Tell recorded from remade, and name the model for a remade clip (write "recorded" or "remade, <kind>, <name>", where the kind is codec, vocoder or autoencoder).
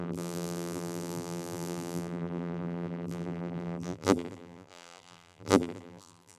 remade, vocoder, BigVGAN v2